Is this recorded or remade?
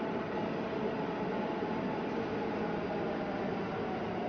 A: recorded